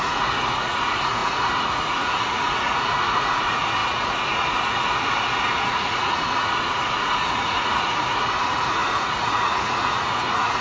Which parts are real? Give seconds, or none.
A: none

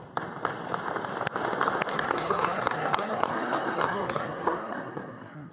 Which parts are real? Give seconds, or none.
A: 0.0-1.9